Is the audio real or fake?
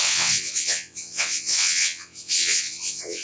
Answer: fake